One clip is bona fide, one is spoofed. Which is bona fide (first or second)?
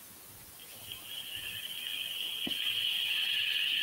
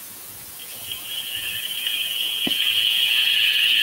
first